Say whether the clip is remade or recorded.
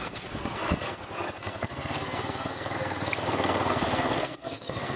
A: remade